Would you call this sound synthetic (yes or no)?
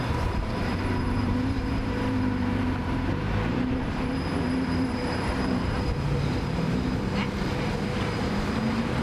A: yes